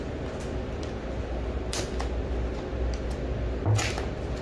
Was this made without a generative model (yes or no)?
yes